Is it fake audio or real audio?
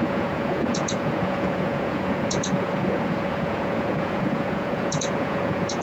fake